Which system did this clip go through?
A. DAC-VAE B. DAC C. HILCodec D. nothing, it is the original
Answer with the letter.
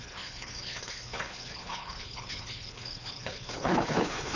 C